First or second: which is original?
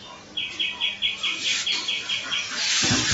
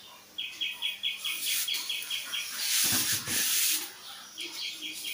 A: first